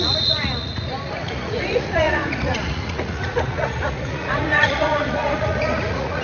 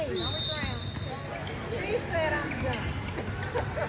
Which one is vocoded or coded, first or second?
first